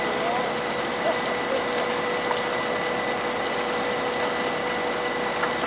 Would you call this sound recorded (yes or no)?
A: yes